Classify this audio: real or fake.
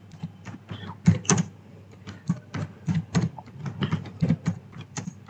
real